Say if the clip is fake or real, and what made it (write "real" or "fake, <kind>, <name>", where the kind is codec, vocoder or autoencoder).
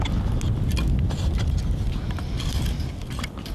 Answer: real